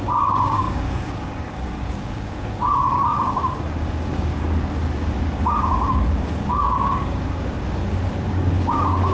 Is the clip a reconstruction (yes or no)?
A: yes